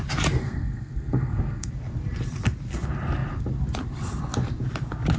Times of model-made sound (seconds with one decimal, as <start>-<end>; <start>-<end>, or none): 0.4-1.7